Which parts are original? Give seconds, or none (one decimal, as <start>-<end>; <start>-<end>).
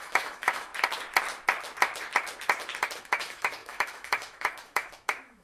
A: 0.7-3.0